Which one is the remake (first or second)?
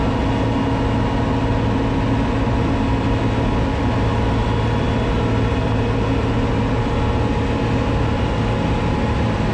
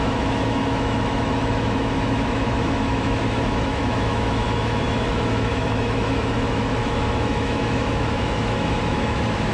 second